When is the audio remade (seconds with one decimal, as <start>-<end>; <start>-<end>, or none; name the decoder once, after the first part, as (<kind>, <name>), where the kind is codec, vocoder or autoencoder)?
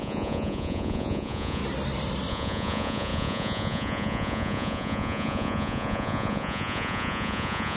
0.0-1.6 (vocoder, Vocos); 2.3-7.8